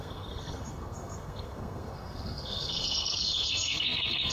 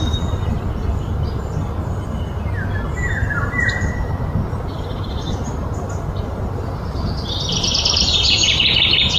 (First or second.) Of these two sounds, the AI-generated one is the first